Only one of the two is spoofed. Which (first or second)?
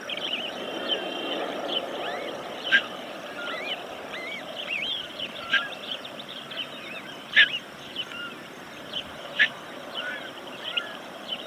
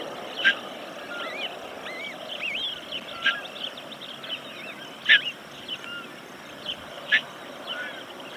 first